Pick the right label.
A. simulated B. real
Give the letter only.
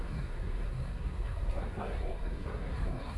A